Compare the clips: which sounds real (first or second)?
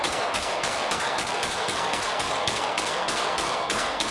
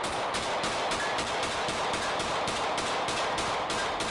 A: second